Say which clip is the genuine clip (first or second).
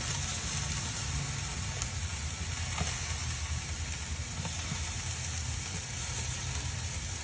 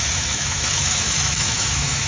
first